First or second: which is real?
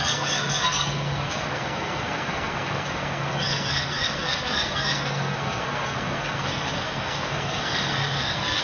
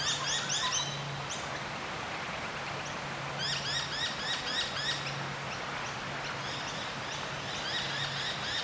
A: second